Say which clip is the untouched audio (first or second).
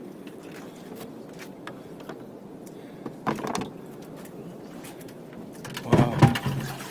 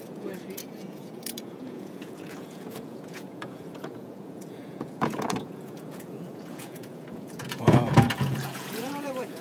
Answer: first